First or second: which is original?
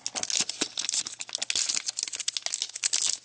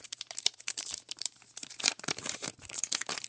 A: first